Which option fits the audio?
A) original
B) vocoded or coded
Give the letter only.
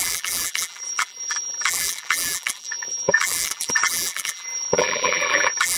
B